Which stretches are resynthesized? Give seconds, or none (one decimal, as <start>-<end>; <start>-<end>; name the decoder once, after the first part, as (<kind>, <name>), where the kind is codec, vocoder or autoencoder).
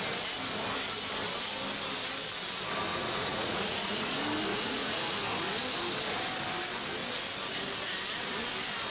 2.9-4.0 (vocoder, Vocos); 4.5-5.2